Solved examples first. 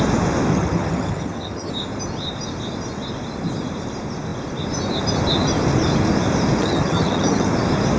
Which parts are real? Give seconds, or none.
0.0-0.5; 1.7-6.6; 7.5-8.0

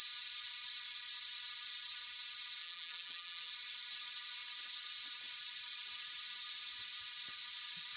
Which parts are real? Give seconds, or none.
0.0-2.6; 3.5-8.0

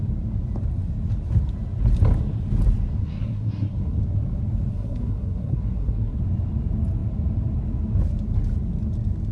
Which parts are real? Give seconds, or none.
0.0-3.0; 4.0-4.7; 6.2-9.3

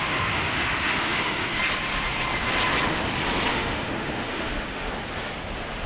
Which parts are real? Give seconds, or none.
1.6-3.5; 4.9-5.9

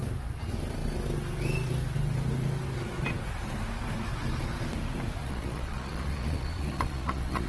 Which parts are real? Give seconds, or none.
0.0-5.2

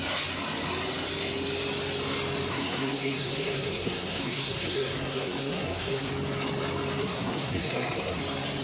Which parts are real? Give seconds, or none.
0.0-2.5; 6.1-7.0; 8.2-8.6